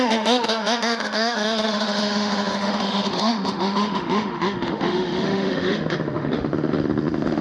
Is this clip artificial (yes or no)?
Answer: yes